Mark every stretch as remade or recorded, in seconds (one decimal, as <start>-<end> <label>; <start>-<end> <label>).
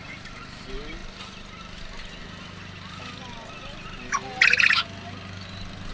0.0-5.9 recorded